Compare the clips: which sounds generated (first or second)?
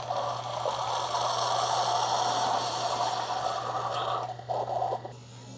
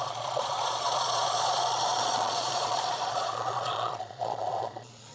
second